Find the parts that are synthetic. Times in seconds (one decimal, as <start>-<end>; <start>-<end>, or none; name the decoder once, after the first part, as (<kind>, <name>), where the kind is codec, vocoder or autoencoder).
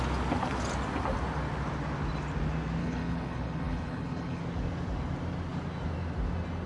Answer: 2.8-4.4 (codec, HILCodec)